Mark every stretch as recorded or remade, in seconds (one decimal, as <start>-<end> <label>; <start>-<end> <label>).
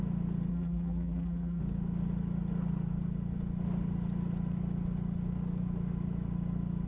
0.0-0.5 recorded; 0.5-1.6 remade; 1.6-6.9 recorded